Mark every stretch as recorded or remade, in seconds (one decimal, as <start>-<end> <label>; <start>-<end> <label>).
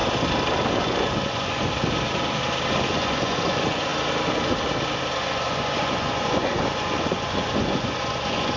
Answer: 0.0-0.8 recorded; 0.8-1.6 remade; 1.6-2.9 recorded; 2.9-3.9 remade; 3.9-5.2 recorded; 5.2-8.6 remade